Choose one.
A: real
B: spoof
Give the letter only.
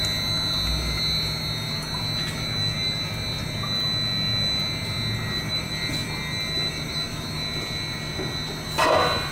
A